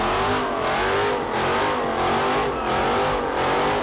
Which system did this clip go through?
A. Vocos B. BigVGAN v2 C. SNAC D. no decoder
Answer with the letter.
D